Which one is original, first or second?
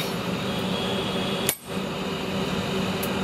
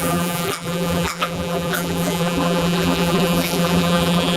first